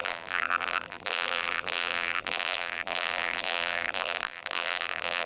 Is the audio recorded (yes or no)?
no